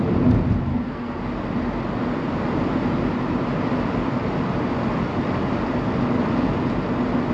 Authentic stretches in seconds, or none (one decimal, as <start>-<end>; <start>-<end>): 0.0-0.7; 1.2-7.3